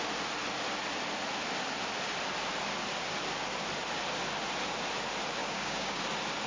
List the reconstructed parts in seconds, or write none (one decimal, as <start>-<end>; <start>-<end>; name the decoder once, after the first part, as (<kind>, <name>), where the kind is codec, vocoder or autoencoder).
5.4-6.0 (codec, DAC)